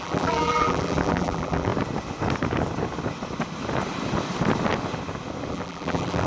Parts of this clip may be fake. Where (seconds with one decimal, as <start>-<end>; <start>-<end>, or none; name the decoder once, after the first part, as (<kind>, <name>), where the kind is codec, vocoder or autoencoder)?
0.0-1.7 (vocoder, BigVGAN v2); 5.5-6.3